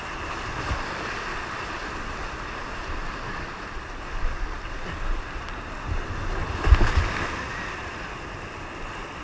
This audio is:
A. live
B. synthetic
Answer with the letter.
A